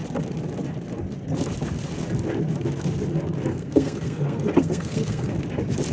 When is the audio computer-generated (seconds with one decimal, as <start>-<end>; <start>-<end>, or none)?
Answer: 3.5-5.3